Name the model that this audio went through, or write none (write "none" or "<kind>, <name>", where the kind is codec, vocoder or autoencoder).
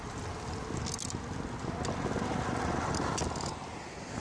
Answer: none